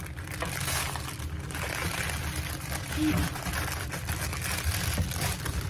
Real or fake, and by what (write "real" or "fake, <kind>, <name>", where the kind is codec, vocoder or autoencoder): real